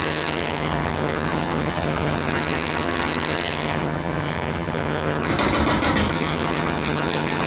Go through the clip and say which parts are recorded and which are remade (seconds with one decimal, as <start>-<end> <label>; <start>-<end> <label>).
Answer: 0.0-5.3 remade; 5.3-6.1 recorded; 6.1-7.5 remade